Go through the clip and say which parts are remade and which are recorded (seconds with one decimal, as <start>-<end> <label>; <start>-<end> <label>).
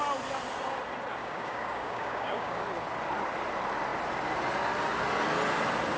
0.0-1.2 recorded; 1.2-2.6 remade; 2.6-6.0 recorded